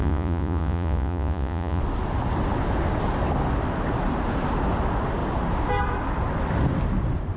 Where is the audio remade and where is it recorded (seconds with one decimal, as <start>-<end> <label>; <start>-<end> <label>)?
0.0-1.8 remade; 1.8-7.4 recorded